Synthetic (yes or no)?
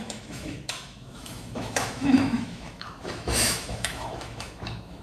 yes